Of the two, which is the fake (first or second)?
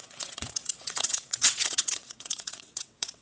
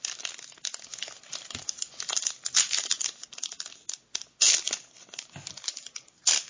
first